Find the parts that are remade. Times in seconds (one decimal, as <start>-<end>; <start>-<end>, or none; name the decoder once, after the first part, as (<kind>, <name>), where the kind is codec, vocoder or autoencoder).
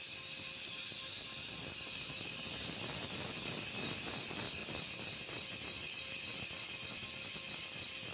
none